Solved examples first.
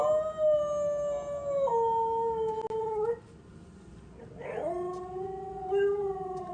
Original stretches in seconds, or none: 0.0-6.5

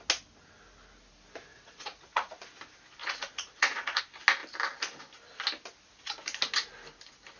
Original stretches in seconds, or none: 0.0-1.5; 2.3-3.0; 4.0-7.4

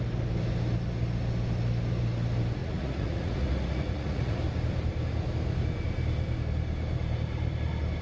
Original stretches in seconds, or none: 0.0-2.6; 4.4-8.0

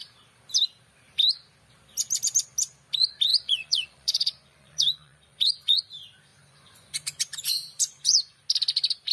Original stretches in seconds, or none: 0.0-3.3; 5.8-6.3; 8.4-9.1

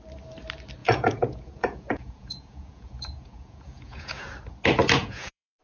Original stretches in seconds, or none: 0.0-0.8; 4.2-5.0

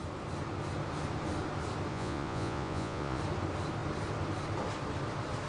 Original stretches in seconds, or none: 0.0-1.9; 3.2-5.5

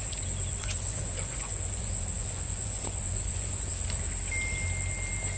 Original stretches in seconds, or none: 0.0-0.5; 3.7-5.4

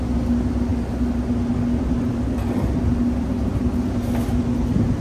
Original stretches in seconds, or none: 0.0-5.0